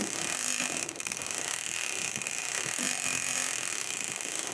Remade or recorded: remade